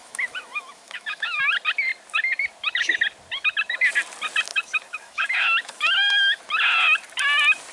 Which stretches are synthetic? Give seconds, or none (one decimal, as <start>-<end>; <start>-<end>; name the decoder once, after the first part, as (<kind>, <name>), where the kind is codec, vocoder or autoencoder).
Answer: 0.0-1.4 (autoencoder, DAC-VAE); 4.5-6.4